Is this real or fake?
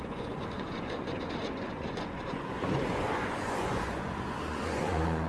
fake